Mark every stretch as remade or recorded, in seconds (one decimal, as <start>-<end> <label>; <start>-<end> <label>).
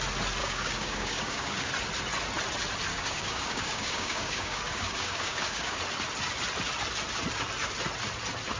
0.0-0.4 recorded; 0.4-1.7 remade; 1.7-2.9 recorded; 2.9-5.8 remade; 5.8-8.6 recorded